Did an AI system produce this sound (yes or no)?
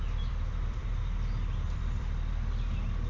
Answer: yes